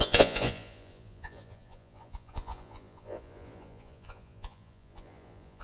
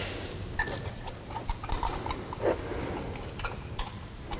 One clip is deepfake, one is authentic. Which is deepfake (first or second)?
first